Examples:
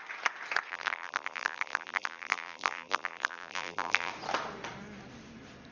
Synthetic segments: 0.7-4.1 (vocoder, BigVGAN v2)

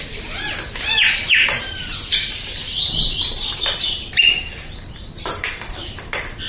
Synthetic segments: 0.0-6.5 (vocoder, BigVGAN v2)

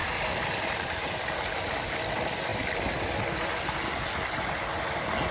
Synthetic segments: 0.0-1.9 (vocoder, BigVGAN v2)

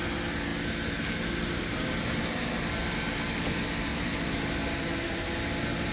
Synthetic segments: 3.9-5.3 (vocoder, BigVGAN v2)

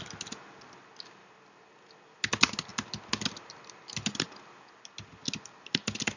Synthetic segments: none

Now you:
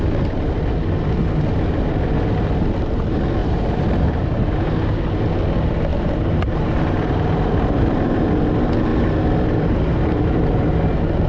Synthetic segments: 3.4-4.8 (vocoder, BigVGAN v2); 5.9-8.3

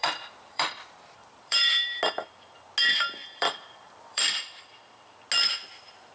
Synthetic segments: 0.0-2.0 (vocoder, BigVGAN v2); 3.2-4.2